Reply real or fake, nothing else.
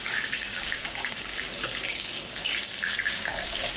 fake